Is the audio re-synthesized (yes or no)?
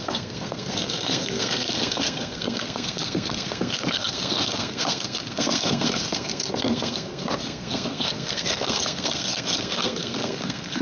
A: yes